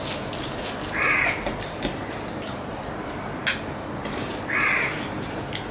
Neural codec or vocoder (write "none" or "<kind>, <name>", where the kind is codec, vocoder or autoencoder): none